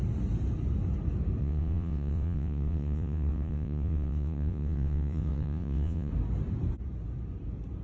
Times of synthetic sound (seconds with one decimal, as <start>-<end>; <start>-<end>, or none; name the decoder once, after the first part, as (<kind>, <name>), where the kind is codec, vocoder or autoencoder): 1.4-6.1 (vocoder, WaveNeXt)